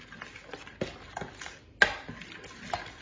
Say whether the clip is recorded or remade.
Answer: recorded